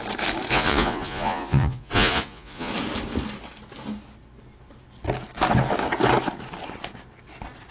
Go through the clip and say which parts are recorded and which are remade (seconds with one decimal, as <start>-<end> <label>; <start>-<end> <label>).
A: 0.0-0.5 recorded; 0.5-2.7 remade; 2.7-7.7 recorded